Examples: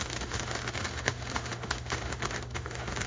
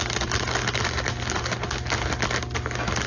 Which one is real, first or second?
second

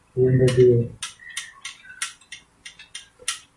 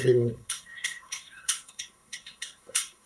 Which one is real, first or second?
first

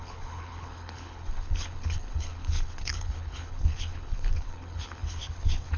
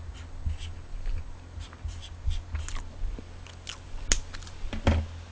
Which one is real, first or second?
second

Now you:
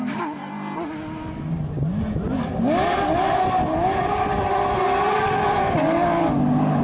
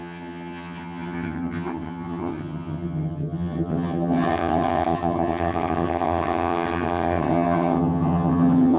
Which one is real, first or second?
first